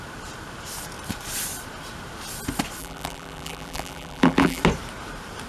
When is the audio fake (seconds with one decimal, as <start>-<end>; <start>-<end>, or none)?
2.8-4.6